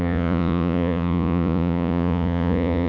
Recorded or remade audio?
remade